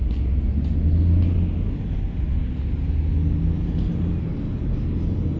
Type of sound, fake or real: real